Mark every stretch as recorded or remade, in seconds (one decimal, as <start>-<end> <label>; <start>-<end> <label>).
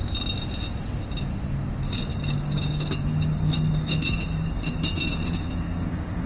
0.0-2.1 recorded; 2.1-6.3 remade